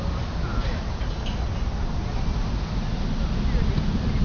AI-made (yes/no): no